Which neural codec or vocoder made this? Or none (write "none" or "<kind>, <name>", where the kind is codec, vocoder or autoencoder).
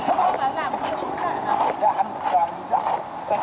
none